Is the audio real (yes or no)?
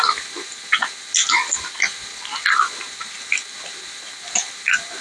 yes